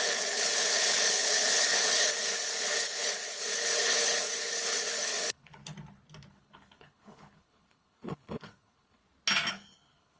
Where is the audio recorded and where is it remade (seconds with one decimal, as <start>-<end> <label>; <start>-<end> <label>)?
0.0-5.6 remade; 5.6-6.3 recorded; 6.3-9.0 remade; 9.0-9.5 recorded; 9.5-10.2 remade